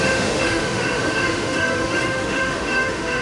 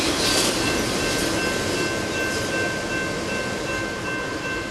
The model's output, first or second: first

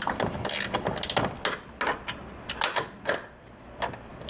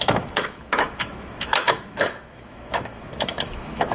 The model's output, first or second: second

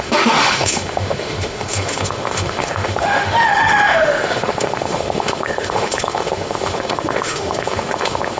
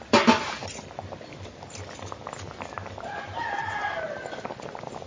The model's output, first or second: first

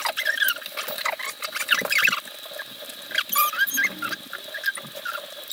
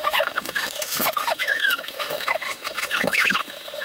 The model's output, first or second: second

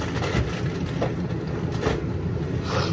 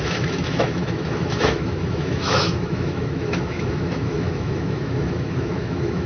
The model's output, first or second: second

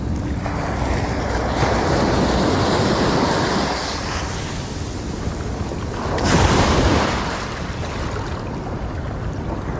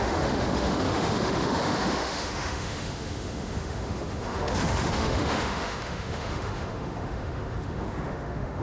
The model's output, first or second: second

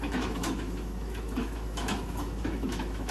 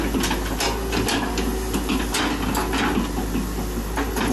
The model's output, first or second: first